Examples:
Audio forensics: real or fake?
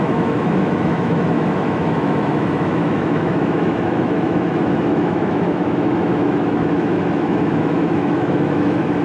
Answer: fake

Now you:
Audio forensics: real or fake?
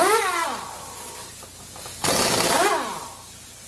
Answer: real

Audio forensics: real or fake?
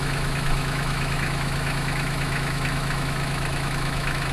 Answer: fake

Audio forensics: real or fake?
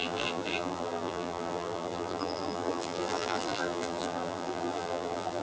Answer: fake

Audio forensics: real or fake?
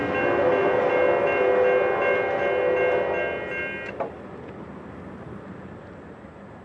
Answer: real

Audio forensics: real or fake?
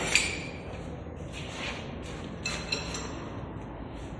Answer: real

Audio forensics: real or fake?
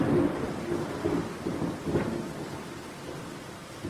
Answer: real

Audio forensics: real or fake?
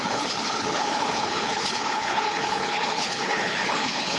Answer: fake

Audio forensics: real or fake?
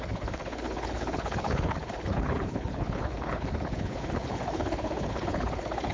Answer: fake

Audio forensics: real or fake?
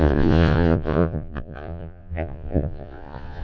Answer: fake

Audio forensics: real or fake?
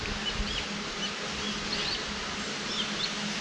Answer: real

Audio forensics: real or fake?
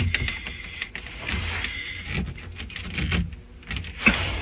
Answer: real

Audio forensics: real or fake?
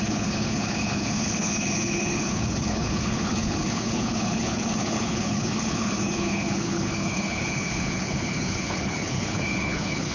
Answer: fake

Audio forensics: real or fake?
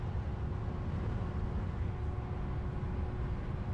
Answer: real